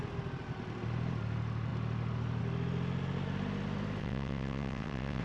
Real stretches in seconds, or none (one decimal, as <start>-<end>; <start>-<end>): 0.0-4.0